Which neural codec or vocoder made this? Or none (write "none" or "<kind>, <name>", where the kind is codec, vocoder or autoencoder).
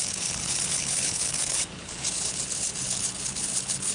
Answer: codec, HILCodec